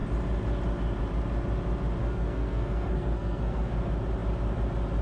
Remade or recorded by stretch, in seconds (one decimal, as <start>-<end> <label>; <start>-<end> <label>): 0.0-2.0 recorded; 2.0-3.7 remade; 3.7-5.0 recorded